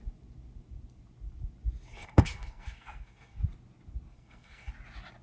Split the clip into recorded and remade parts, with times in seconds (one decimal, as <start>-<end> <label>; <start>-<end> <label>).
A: 0.0-1.9 recorded; 1.9-3.4 remade; 3.4-4.1 recorded; 4.1-4.7 remade; 4.7-5.2 recorded